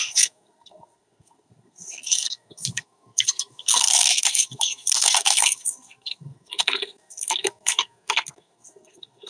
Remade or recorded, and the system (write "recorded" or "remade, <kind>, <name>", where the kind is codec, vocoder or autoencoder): remade, codec, SNAC